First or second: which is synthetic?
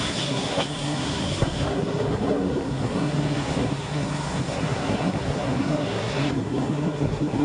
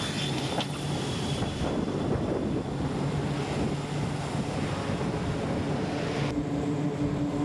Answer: first